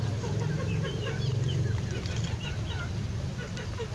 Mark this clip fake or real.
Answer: fake